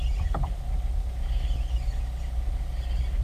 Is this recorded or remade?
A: recorded